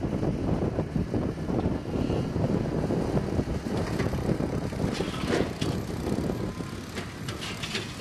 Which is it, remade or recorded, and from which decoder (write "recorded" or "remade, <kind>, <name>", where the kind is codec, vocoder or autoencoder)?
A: recorded